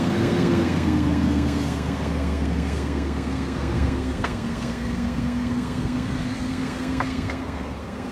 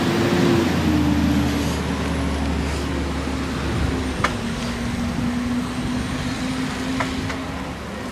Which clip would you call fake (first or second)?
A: first